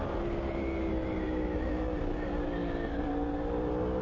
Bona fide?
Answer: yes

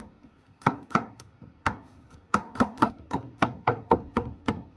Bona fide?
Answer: no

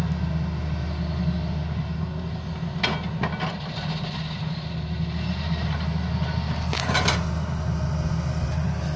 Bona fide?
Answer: yes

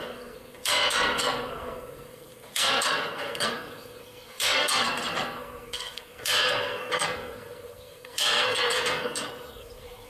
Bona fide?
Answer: no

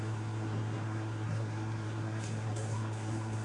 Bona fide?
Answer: no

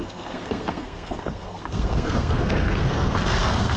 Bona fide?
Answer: no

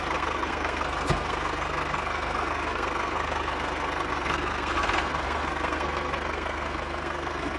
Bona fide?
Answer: no